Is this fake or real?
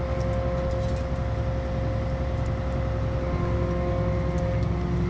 real